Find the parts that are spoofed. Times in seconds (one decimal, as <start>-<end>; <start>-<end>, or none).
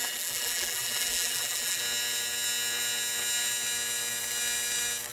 0.0-1.8